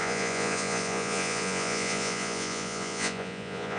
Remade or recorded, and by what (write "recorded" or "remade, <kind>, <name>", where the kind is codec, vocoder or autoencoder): remade, vocoder, Vocos